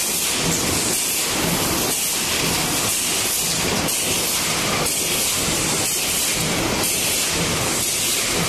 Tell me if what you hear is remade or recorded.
recorded